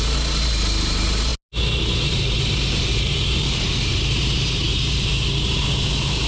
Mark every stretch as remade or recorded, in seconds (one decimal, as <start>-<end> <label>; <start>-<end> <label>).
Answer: 0.0-1.3 remade; 1.3-2.0 recorded; 2.0-6.3 remade